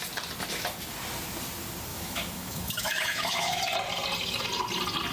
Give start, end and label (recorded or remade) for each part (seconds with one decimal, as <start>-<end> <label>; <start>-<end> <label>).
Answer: 0.0-1.9 recorded; 1.9-3.6 remade; 3.6-5.1 recorded